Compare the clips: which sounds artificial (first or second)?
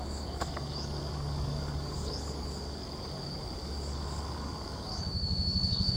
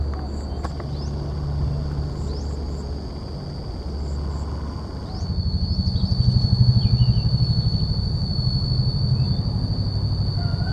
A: first